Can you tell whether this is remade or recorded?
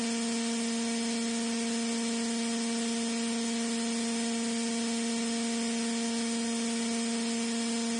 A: recorded